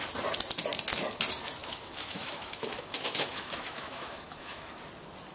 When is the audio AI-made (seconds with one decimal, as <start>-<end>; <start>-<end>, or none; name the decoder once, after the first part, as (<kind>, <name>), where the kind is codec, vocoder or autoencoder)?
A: 1.6-4.8 (autoencoder, DAC-VAE)